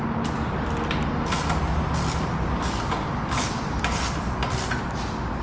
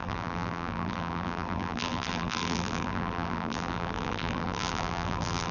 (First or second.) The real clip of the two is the first